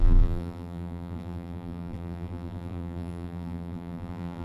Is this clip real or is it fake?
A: fake